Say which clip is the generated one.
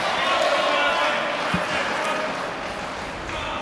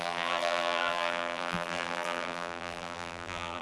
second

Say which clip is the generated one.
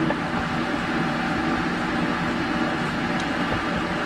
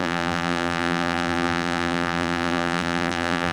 second